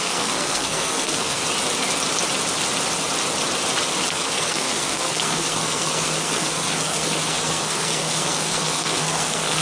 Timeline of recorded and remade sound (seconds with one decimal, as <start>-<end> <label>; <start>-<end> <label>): 0.0-1.4 remade; 1.4-4.1 recorded; 4.1-9.6 remade